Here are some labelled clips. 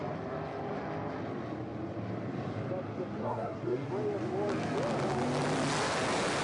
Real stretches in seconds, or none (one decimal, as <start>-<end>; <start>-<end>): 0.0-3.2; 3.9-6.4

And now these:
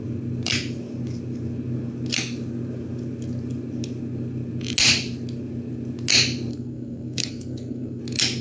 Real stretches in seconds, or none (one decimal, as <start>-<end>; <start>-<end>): 0.0-6.5; 8.0-8.4

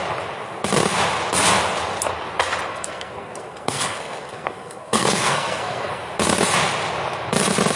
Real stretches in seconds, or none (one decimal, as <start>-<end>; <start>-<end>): 0.0-2.7; 6.0-7.8

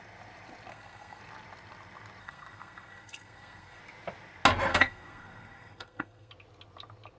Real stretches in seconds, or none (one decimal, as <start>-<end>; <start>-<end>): 0.0-0.7; 1.2-2.2; 3.8-4.7; 6.3-7.2